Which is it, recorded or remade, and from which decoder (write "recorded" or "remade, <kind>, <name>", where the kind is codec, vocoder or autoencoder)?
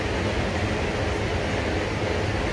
recorded